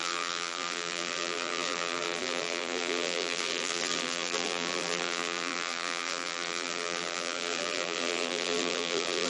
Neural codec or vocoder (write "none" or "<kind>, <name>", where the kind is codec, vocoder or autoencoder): vocoder, BigVGAN v2